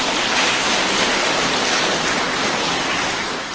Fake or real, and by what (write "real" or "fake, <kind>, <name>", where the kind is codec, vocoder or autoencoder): real